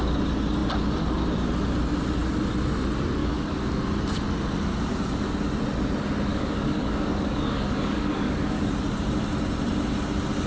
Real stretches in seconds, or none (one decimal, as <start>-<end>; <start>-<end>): 0.0-3.2; 3.7-6.3; 8.7-10.5